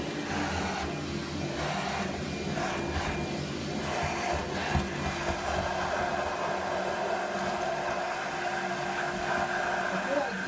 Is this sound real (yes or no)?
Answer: yes